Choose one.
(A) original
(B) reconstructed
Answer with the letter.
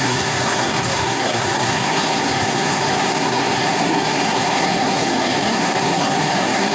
B